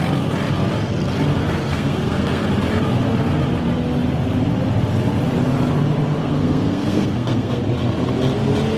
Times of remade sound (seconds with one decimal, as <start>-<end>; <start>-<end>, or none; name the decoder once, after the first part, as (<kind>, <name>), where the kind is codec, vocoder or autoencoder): 1.4-2.5 (codec, SNAC); 6.2-7.6